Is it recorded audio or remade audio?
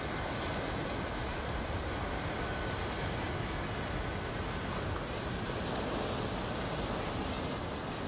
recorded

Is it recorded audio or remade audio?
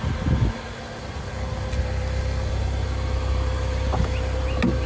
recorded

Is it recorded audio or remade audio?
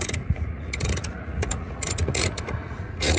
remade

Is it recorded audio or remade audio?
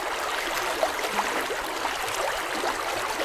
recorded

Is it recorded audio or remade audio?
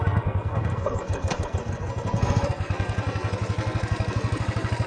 remade